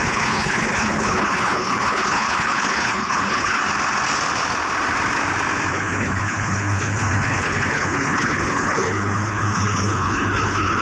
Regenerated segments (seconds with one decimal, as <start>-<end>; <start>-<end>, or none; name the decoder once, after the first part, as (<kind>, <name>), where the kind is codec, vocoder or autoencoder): 0.0-3.6 (codec, HILCodec); 5.7-10.8